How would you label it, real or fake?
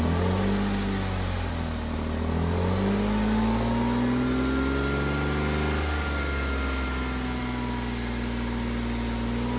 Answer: real